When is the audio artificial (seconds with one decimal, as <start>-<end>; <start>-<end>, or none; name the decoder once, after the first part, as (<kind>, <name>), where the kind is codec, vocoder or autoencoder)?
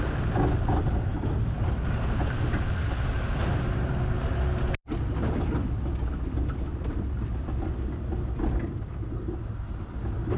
6.7-7.5 (vocoder, BigVGAN v2)